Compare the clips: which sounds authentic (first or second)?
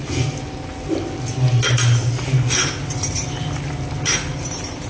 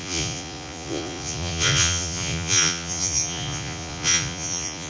first